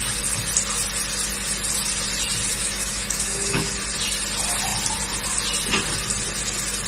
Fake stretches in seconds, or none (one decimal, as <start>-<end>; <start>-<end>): 2.5-3.7